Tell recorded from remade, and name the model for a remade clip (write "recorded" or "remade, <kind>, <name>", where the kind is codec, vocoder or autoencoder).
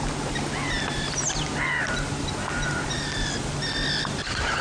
recorded